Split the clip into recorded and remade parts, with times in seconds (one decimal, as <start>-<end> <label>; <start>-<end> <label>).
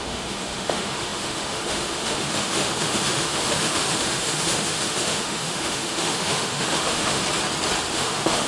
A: 0.0-7.2 remade; 7.2-7.9 recorded; 7.9-8.5 remade